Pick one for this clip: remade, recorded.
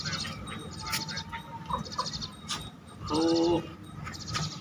recorded